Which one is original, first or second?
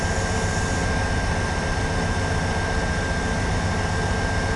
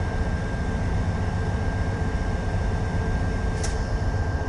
first